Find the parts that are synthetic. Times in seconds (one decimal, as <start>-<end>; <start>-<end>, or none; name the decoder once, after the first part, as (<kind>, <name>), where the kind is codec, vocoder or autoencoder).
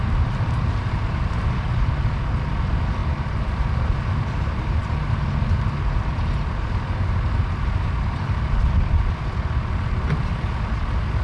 0.0-2.0 (vocoder, BigVGAN v2); 3.0-8.0